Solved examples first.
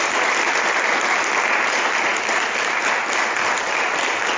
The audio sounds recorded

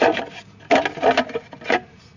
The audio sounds recorded